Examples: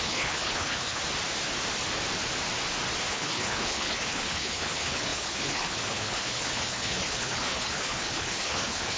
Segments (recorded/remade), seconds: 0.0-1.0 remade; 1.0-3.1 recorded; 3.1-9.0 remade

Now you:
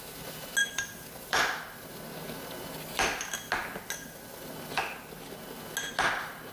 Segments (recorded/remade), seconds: 0.0-0.6 recorded; 0.6-1.4 remade; 1.4-6.5 recorded

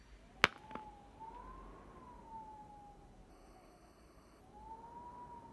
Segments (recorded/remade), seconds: 0.0-3.3 recorded; 3.3-4.4 remade; 4.4-5.5 recorded

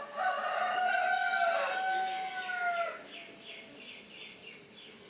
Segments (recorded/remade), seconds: 0.0-5.1 recorded

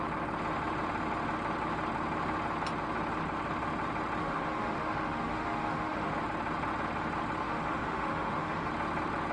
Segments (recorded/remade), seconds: 0.0-4.2 recorded; 4.2-6.1 remade; 6.1-7.4 recorded; 7.4-8.7 remade; 8.7-9.3 recorded